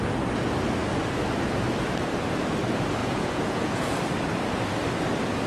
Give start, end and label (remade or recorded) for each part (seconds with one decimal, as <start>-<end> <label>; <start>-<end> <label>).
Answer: 0.0-3.0 recorded; 3.0-3.9 remade; 3.9-5.5 recorded